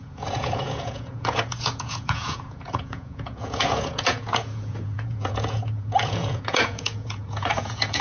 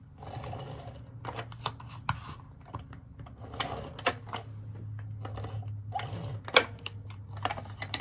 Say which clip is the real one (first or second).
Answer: second